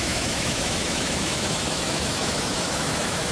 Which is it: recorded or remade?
remade